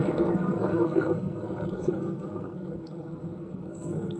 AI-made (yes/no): yes